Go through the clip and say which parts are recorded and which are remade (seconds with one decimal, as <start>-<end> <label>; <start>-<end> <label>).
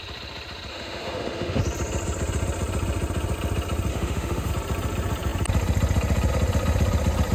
0.0-0.7 recorded; 0.7-1.6 remade; 1.6-3.9 recorded; 3.9-4.5 remade; 4.5-7.3 recorded